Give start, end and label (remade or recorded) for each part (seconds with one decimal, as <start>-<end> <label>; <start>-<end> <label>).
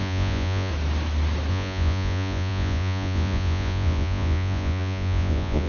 0.0-0.7 remade; 0.7-1.5 recorded; 1.5-5.7 remade